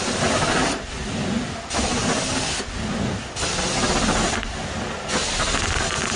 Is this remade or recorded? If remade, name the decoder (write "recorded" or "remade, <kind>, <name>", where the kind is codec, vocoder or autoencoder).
recorded